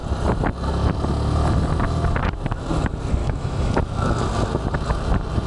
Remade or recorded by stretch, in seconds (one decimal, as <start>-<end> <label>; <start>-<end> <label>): 0.0-3.2 recorded; 3.2-3.7 remade; 3.7-5.5 recorded